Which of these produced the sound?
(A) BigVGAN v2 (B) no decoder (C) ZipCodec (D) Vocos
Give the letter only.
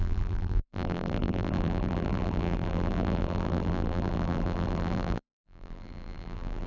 A